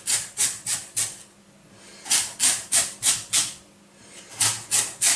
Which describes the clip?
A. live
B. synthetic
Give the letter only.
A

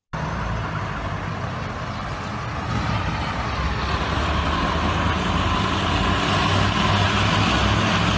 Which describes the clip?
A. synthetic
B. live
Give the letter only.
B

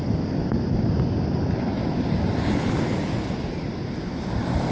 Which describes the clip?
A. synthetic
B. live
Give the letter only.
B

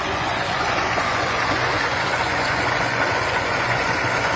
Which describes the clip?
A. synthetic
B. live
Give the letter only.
A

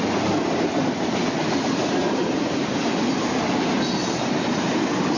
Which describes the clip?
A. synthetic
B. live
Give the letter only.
B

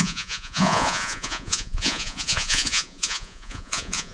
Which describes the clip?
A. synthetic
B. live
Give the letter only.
A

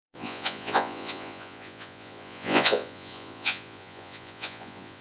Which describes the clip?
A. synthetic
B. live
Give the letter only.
A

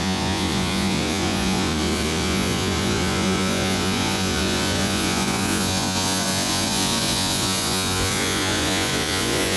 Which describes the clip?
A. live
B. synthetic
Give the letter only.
B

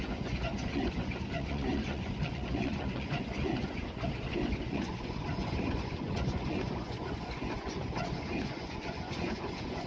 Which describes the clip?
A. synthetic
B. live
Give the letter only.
A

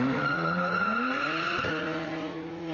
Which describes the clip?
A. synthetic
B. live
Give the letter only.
A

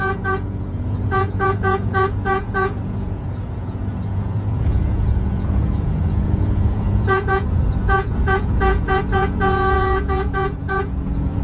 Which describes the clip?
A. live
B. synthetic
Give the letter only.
B